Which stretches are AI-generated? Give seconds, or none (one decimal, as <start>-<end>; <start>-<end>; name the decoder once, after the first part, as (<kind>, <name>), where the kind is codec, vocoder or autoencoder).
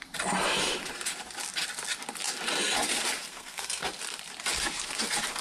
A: 3.3-3.9 (codec, SNAC)